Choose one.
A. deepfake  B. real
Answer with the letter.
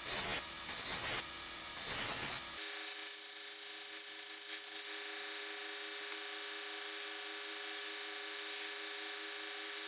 B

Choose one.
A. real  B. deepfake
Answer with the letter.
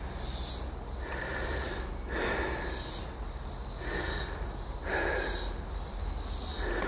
A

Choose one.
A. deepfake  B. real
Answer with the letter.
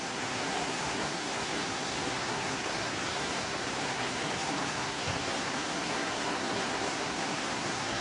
A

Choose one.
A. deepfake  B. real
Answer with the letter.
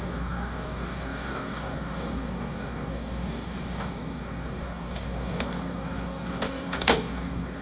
A